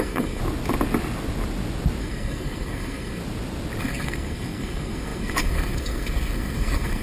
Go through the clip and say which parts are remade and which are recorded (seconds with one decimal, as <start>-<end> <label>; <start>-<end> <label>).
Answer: 0.0-0.4 remade; 0.4-2.0 recorded; 2.0-3.2 remade; 3.2-3.8 recorded; 3.8-7.0 remade